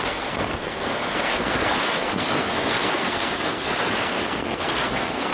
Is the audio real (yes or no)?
no